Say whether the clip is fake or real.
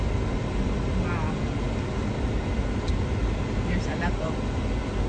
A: real